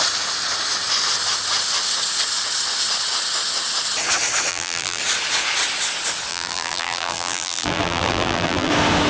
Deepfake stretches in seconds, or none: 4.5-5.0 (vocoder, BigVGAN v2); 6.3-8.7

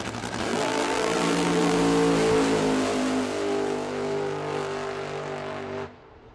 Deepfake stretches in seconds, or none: 0.5-1.8 (vocoder, BigVGAN v2)

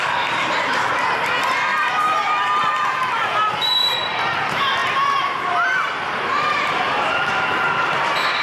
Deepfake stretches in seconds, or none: 0.0-4.8 (vocoder, BigVGAN v2); 5.4-8.4